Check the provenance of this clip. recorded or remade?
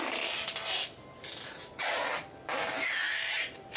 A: recorded